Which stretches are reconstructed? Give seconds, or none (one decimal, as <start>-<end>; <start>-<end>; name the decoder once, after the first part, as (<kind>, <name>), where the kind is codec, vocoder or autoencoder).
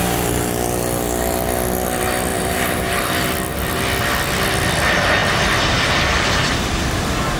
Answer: 2.3-2.8 (vocoder, BigVGAN v2)